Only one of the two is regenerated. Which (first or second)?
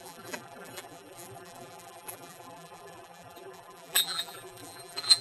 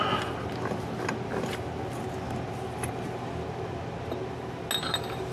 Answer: first